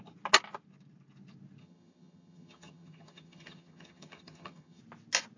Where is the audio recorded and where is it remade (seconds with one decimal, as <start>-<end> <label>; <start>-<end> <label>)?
0.0-1.6 recorded; 1.6-4.8 remade; 4.8-5.4 recorded